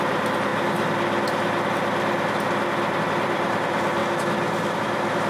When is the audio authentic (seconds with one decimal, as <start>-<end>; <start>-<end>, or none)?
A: 0.5-3.0; 4.0-4.8